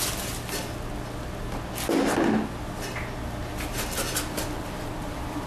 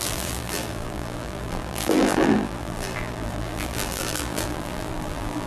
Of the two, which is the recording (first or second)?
first